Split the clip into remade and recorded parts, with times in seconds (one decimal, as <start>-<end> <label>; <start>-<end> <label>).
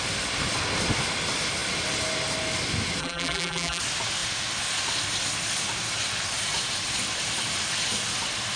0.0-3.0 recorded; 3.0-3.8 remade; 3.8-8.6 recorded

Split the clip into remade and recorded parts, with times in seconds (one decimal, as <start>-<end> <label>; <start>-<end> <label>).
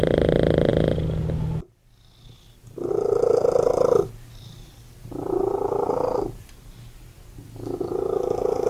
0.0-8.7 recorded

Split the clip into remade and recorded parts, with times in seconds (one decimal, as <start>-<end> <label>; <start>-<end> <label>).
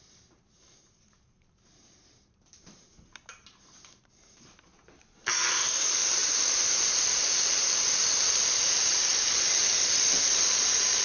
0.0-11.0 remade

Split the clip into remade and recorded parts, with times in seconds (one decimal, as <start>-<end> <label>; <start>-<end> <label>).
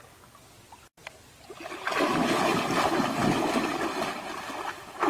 0.0-5.1 recorded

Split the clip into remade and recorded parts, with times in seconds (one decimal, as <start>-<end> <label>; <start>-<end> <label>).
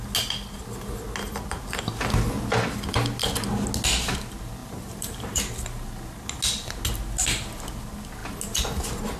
0.0-4.6 recorded; 4.6-5.4 remade; 5.4-9.2 recorded